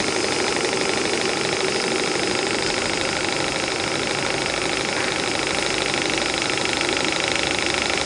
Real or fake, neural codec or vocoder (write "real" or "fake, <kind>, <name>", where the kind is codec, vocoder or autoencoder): real